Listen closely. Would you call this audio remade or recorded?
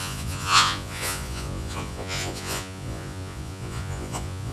remade